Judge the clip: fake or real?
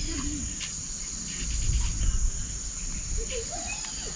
real